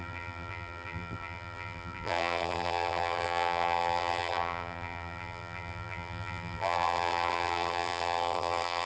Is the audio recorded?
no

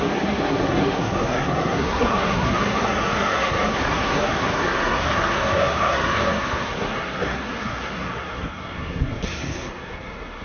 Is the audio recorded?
no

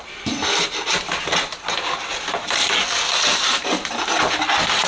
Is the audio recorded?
yes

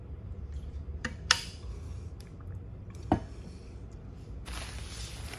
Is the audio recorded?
no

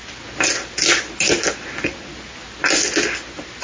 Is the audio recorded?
yes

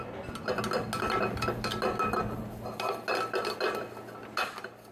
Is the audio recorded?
yes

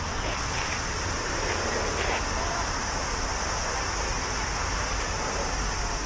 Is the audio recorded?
yes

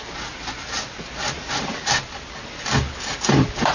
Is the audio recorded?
yes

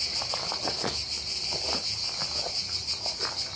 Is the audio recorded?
yes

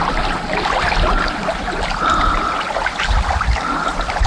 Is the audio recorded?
yes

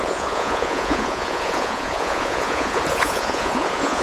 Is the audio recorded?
no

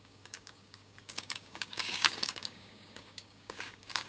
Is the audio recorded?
no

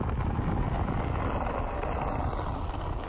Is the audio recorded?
no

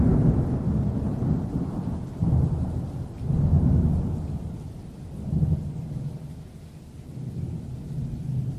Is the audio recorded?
yes